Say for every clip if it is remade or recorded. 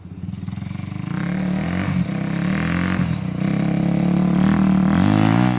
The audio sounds recorded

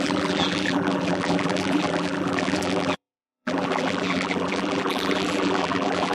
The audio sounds remade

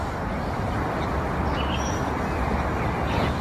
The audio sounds recorded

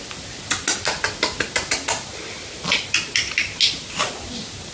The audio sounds recorded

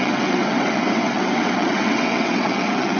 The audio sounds remade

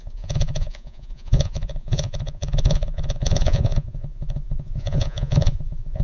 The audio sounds remade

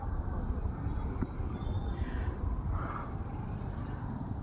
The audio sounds recorded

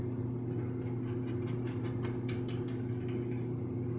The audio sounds recorded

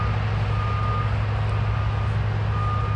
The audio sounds recorded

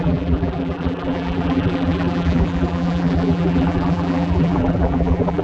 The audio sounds remade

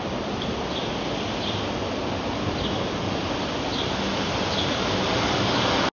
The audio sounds recorded